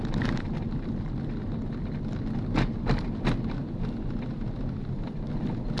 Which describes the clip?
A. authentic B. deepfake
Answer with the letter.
A